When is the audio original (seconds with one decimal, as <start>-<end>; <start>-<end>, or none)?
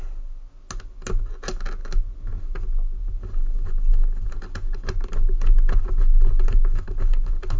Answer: 0.0-7.6